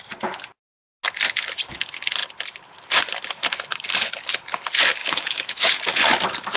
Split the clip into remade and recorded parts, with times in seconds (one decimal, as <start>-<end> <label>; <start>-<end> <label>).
0.0-5.0 recorded; 5.0-5.8 remade; 5.8-6.6 recorded

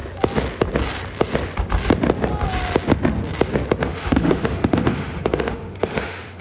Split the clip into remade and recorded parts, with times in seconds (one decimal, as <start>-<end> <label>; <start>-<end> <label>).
0.0-3.8 recorded; 3.8-6.4 remade

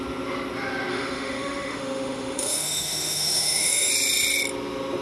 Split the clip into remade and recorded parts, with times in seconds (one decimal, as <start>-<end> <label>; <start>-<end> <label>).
0.0-0.9 recorded; 0.9-3.9 remade; 3.9-5.0 recorded

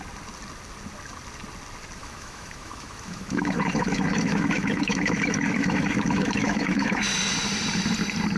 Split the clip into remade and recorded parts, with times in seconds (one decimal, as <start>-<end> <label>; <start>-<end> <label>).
0.0-2.0 recorded; 2.0-7.0 remade; 7.0-8.4 recorded

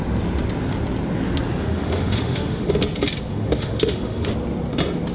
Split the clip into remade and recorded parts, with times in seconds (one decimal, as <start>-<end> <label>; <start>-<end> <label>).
0.0-1.6 recorded; 1.6-2.7 remade; 2.7-3.3 recorded; 3.3-4.3 remade; 4.3-5.1 recorded

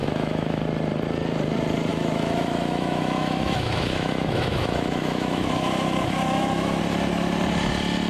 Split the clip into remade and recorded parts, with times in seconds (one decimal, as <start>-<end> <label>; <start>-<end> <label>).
0.0-0.6 remade; 0.6-1.9 recorded; 1.9-6.8 remade; 6.8-8.1 recorded